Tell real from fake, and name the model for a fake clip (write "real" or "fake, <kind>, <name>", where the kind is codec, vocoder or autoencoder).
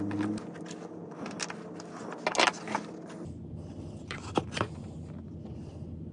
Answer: real